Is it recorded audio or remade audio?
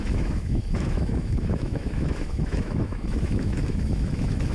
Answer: remade